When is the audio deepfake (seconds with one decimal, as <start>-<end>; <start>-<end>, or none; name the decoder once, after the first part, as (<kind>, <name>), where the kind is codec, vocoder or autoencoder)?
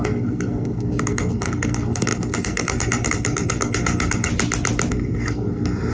0.0-4.3 (codec, SNAC); 4.9-5.9